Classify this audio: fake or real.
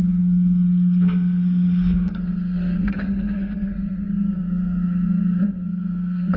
fake